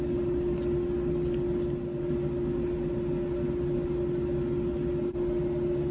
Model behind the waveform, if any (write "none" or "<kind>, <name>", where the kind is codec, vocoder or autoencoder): none